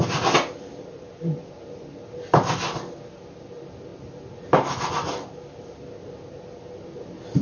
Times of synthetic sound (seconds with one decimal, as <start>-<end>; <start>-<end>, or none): none